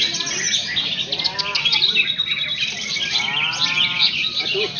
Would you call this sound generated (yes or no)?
no